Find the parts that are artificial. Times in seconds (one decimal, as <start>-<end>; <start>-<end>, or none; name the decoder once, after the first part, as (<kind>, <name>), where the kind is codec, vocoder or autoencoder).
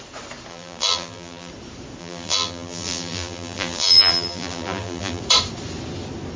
0.5-1.5 (vocoder, BigVGAN v2); 2.0-5.2